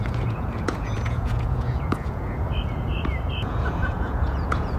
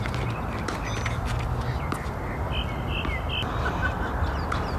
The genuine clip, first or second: second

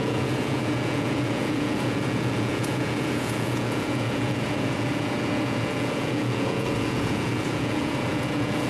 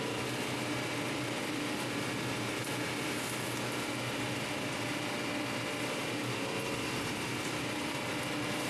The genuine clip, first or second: second